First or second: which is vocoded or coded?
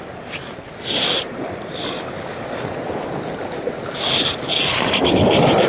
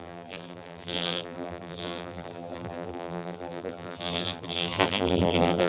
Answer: second